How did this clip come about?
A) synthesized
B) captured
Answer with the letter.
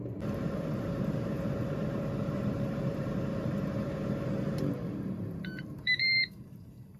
A